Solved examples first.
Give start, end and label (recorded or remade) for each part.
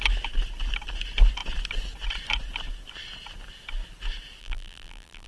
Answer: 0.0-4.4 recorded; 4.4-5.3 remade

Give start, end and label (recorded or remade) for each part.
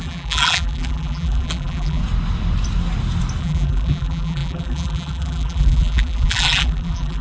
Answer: 0.0-2.0 remade; 2.0-3.4 recorded; 3.4-7.2 remade